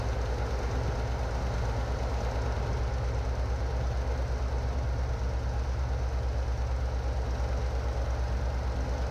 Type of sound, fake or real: real